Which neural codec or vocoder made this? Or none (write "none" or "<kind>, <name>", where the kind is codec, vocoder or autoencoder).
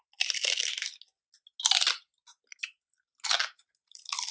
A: none